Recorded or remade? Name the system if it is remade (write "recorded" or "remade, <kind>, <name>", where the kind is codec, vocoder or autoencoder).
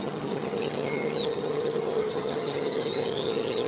remade, vocoder, HiFi-GAN